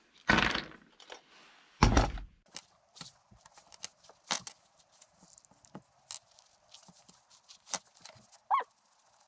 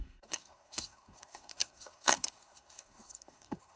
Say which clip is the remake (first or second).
second